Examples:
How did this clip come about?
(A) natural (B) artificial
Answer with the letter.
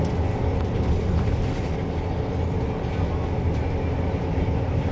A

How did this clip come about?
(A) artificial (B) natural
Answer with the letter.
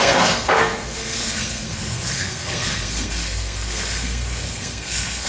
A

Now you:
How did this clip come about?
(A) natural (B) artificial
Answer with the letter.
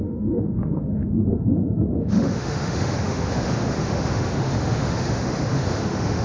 B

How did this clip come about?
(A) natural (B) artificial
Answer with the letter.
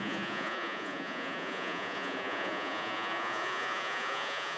B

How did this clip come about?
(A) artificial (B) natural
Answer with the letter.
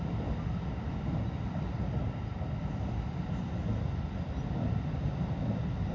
B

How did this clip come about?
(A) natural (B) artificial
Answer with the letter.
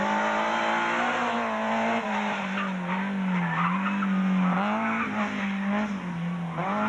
A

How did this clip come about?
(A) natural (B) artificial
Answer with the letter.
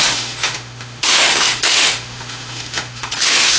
B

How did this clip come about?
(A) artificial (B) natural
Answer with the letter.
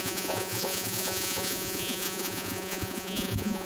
A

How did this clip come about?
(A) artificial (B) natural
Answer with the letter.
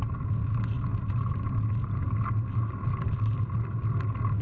B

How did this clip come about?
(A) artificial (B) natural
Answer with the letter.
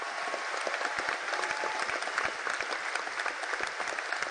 B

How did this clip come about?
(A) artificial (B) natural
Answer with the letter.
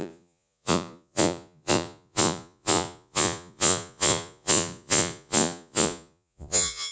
A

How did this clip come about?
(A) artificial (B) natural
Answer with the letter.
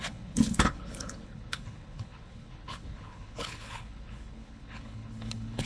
A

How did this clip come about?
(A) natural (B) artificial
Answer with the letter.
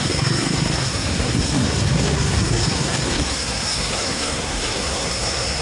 B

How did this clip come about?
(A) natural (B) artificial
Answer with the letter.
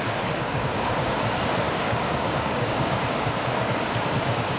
B